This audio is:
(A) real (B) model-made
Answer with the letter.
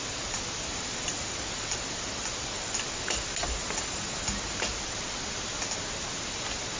A